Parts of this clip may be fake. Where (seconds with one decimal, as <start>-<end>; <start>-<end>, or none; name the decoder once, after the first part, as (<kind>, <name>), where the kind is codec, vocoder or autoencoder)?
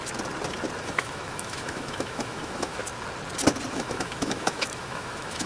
0.8-2.8 (autoencoder, DAC-VAE); 3.7-5.5